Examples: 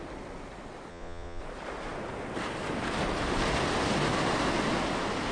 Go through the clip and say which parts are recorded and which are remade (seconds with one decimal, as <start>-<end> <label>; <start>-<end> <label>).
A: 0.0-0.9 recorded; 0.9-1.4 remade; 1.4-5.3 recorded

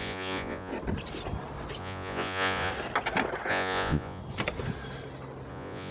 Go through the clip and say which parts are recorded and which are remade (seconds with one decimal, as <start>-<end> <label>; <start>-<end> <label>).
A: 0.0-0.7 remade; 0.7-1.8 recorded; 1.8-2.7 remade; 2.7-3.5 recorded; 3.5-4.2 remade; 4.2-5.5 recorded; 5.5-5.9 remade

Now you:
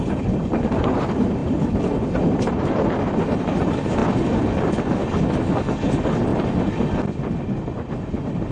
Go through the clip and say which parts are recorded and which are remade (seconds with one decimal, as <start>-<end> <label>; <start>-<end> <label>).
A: 0.0-8.5 recorded